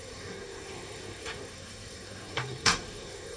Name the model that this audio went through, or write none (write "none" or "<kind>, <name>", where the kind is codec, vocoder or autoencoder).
codec, SNAC